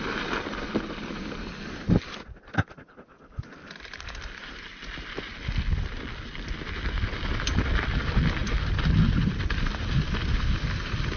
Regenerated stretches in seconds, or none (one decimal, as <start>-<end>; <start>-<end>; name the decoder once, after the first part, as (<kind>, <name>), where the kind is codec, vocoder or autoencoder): none